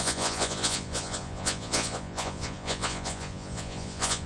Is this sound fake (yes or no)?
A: yes